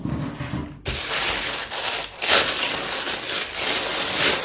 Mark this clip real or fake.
real